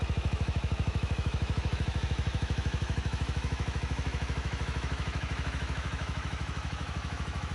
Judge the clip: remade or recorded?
remade